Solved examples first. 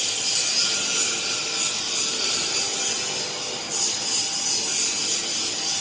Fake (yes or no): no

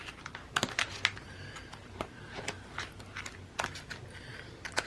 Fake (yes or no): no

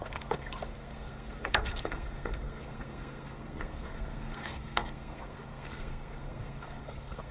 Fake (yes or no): yes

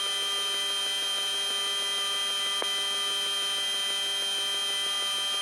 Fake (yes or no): no